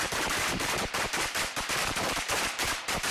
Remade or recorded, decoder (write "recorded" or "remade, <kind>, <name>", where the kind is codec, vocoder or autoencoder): remade, vocoder, BigVGAN v2